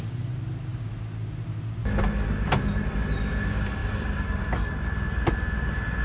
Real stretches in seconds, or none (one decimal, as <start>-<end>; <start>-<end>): 0.0-6.0